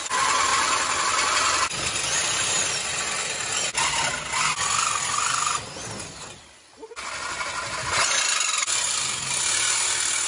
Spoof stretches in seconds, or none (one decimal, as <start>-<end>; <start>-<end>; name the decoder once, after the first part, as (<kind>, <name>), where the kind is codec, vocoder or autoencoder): 0.5-3.5 (vocoder, BigVGAN v2)